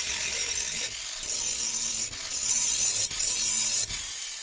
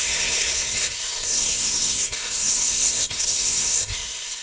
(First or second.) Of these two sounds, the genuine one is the first